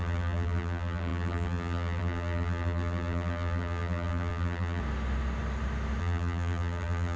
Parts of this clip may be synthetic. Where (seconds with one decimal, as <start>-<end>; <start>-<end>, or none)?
0.0-4.8; 6.0-7.2